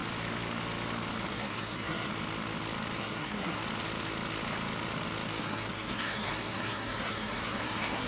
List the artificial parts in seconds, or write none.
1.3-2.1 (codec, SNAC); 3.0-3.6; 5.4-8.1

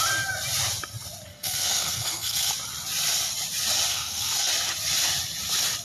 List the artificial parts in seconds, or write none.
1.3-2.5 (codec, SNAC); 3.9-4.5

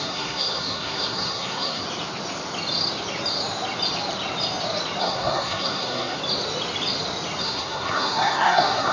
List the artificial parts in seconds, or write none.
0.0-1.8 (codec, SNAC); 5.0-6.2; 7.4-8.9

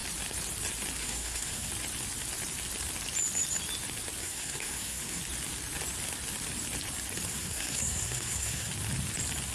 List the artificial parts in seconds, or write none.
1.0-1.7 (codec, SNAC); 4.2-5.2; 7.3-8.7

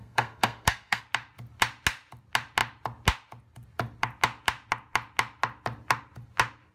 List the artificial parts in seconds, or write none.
0.0-1.0 (codec, SNAC)

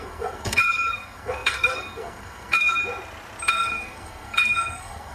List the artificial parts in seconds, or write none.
0.0-2.8 (codec, SNAC); 3.5-5.1

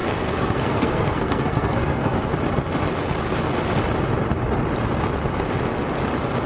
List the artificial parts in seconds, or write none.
0.0-2.2 (codec, SNAC)

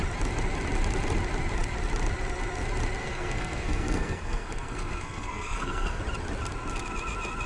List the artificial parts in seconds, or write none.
3.0-6.0 (codec, SNAC)